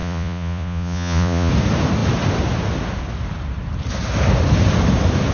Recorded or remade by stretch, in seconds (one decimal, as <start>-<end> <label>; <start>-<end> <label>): 0.0-1.5 remade; 1.5-5.3 recorded